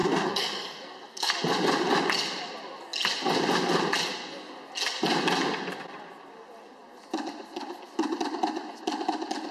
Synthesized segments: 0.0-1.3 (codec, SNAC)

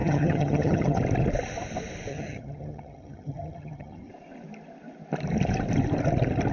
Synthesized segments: 0.0-1.0 (vocoder, HiFi-GAN); 2.1-4.1

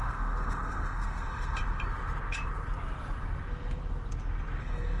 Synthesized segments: 0.0-1.6 (codec, SNAC); 4.6-5.0

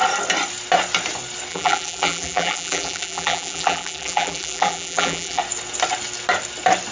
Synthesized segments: 1.5-5.4 (vocoder, BigVGAN v2)

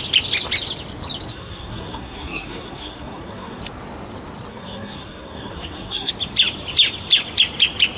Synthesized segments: 1.3-3.6 (codec, SNAC); 4.5-6.1